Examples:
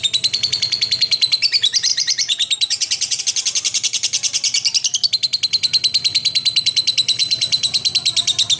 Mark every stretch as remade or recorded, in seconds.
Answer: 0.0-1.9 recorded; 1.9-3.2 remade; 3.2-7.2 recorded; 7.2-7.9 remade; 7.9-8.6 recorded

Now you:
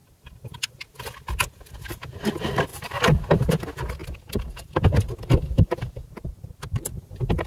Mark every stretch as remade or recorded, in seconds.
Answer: 0.0-7.5 recorded

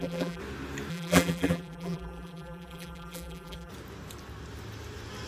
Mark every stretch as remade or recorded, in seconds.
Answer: 0.0-0.4 remade; 0.4-0.9 recorded; 0.9-3.7 remade; 3.7-5.3 recorded

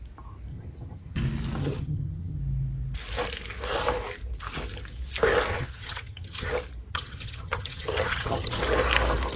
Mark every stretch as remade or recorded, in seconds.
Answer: 0.0-0.5 recorded; 0.5-1.2 remade; 1.2-1.6 recorded; 1.6-2.4 remade; 2.4-5.5 recorded; 5.5-6.5 remade; 6.5-6.9 recorded; 6.9-8.6 remade; 8.6-9.4 recorded